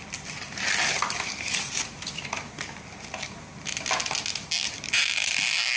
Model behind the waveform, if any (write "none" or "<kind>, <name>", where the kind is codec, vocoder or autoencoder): none